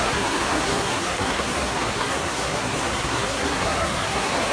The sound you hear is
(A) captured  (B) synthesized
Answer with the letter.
B